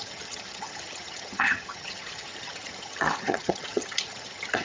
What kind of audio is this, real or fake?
fake